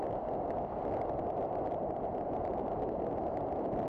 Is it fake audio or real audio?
real